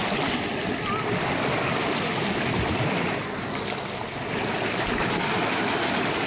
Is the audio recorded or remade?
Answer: recorded